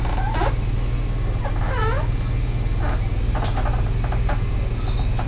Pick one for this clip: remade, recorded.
recorded